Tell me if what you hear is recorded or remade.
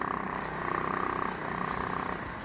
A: recorded